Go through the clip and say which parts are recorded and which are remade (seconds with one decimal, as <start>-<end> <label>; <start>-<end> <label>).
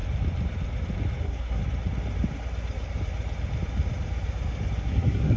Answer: 0.0-1.2 recorded; 1.2-1.6 remade; 1.6-4.8 recorded; 4.8-5.4 remade